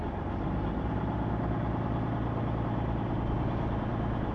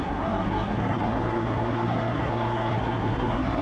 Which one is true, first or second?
first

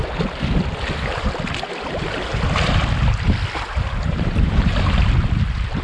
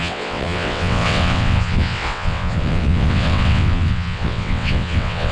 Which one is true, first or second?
first